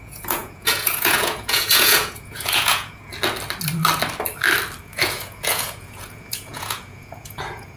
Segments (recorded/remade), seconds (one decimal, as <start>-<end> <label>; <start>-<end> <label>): 0.0-3.1 remade; 3.1-4.8 recorded; 4.8-7.8 remade